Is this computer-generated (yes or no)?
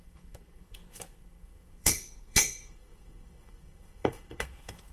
yes